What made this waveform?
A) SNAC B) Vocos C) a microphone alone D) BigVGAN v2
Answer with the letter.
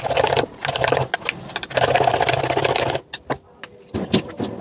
C